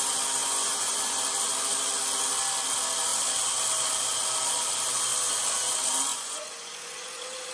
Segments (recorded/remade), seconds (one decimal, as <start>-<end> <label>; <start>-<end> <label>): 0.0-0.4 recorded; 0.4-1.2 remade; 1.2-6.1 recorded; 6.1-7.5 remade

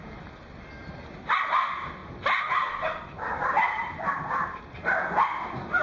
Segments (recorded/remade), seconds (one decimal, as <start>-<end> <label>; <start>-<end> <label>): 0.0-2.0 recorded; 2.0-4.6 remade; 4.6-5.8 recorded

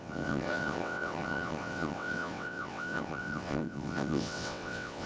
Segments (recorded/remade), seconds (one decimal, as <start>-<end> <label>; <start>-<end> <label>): 0.0-5.1 remade

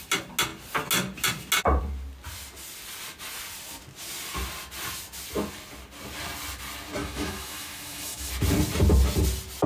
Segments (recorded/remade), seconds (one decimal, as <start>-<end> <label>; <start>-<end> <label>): 0.0-7.0 recorded; 7.0-8.3 remade; 8.3-9.7 recorded

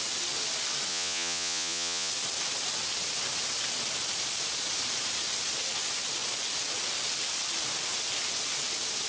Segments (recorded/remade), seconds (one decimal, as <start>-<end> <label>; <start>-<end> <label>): 0.0-0.9 recorded; 0.9-2.1 remade; 2.1-9.1 recorded

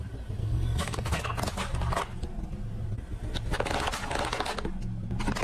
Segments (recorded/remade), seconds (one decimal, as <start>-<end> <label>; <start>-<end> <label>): 0.0-0.4 recorded; 0.4-1.2 remade; 1.2-5.4 recorded